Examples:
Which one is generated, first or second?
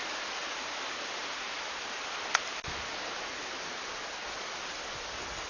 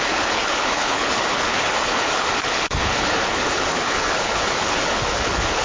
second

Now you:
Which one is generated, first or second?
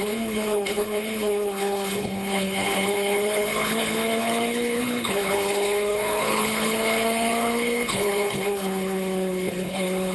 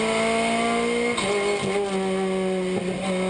first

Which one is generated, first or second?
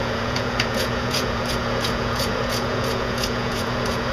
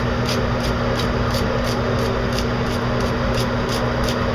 first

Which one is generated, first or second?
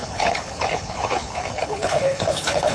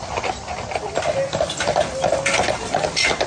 first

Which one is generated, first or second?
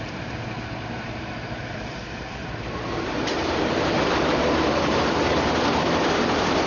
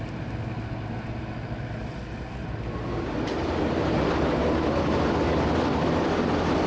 first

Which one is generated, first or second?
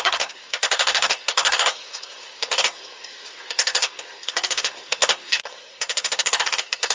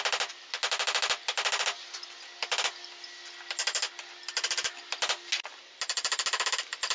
first